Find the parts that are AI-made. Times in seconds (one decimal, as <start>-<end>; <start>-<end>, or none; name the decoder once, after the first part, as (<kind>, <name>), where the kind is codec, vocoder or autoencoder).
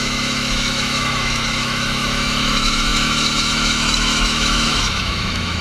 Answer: 0.0-5.6 (autoencoder, DAC-VAE)